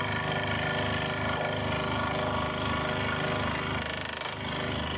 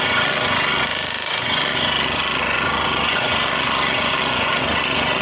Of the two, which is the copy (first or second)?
second